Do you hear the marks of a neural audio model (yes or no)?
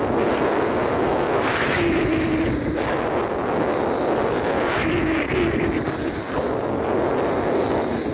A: no